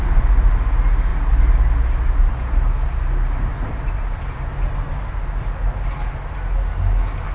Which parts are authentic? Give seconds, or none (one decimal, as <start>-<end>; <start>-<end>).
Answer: 0.0-7.3